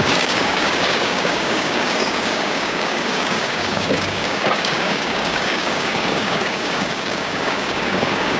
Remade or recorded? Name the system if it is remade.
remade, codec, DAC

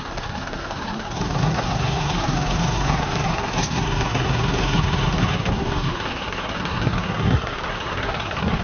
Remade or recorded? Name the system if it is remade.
remade, codec, SNAC